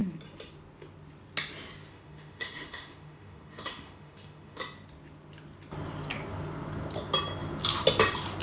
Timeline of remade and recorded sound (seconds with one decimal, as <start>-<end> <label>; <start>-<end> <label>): 0.0-1.9 recorded; 1.9-4.6 remade; 4.6-8.4 recorded